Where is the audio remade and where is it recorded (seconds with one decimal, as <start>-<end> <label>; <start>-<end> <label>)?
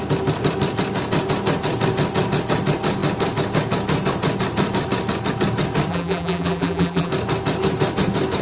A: 0.0-5.9 recorded; 5.9-7.1 remade; 7.1-8.4 recorded